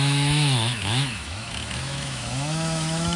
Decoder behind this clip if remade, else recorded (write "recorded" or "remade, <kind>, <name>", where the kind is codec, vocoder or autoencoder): remade, autoencoder, DAC-VAE